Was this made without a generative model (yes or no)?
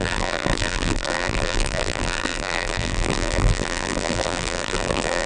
no